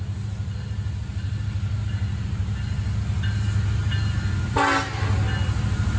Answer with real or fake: real